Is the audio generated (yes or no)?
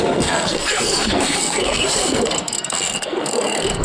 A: yes